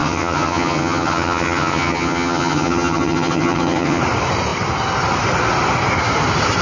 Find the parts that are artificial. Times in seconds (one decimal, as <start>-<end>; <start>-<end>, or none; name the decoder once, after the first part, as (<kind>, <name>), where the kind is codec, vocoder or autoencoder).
0.0-4.0 (vocoder, HiFi-GAN)